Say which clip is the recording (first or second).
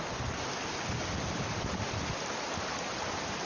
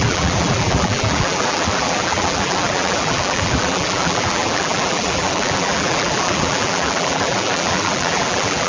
first